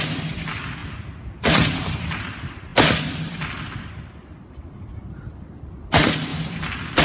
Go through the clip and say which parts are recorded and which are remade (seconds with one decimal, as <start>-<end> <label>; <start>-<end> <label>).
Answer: 0.0-0.8 recorded; 0.8-2.2 remade; 2.2-7.0 recorded